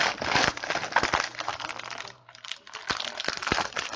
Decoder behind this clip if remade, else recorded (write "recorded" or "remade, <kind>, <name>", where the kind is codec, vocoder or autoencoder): remade, vocoder, BigVGAN v2